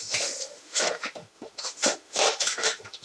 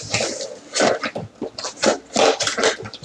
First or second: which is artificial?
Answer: first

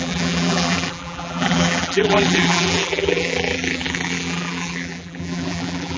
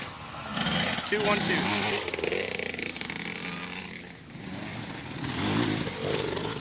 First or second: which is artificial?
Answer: first